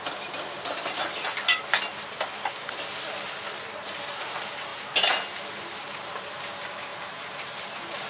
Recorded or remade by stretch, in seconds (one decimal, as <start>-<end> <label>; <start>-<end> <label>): 0.0-6.9 recorded; 6.9-8.1 remade